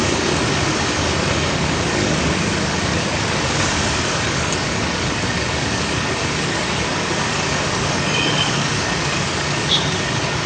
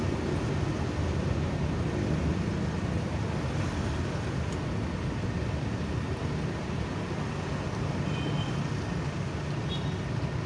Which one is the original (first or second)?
second